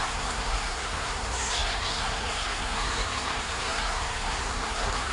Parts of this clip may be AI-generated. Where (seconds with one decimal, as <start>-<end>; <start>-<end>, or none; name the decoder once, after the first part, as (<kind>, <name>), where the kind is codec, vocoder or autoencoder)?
0.0-5.1 (codec, SNAC)